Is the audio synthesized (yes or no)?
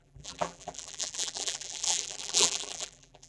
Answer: yes